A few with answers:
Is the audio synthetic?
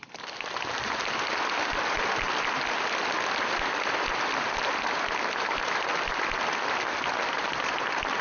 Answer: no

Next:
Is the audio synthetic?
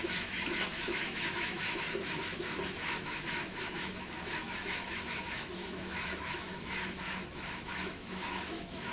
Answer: yes